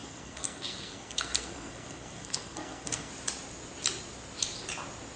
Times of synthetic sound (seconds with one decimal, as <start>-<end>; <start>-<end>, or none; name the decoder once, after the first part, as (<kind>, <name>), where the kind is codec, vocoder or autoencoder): 0.0-3.1 (codec, SNAC)

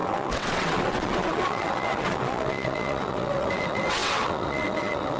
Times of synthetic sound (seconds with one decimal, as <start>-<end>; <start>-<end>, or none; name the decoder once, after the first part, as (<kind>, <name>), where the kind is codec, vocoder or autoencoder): 0.0-5.2 (vocoder, WaveNeXt)

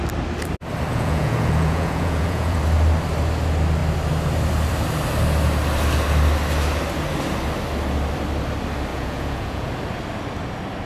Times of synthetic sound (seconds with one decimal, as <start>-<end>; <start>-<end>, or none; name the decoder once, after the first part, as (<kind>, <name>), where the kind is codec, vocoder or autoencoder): 0.9-2.6 (vocoder, Vocos); 8.9-9.7

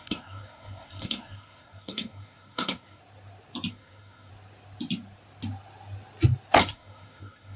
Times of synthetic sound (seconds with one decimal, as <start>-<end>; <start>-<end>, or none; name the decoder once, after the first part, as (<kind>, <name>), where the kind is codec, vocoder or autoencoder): 0.0-3.0 (codec, SNAC); 3.7-4.3; 6.6-7.6

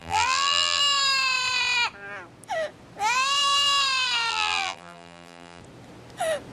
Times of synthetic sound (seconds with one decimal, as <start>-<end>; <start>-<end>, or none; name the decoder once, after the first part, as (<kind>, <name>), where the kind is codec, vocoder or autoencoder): 0.0-0.8 (vocoder, BigVGAN v2); 4.3-5.6

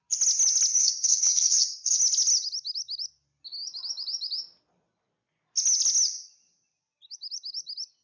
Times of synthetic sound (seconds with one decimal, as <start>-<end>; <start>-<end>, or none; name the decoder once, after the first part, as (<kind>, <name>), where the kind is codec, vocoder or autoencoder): 0.8-2.0 (codec, SNAC)

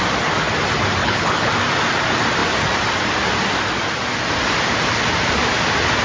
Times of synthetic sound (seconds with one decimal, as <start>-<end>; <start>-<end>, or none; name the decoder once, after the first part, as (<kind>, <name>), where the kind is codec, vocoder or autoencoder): 1.0-1.5 (codec, HILCodec)